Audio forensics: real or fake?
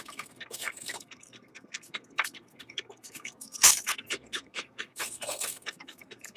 fake